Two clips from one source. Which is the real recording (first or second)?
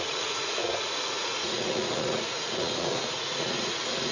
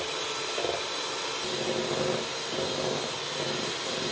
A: second